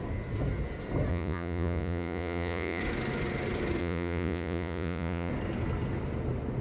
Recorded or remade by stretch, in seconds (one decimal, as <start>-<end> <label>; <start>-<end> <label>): 0.0-1.1 recorded; 1.1-2.8 remade; 2.8-3.8 recorded; 3.8-5.3 remade; 5.3-6.6 recorded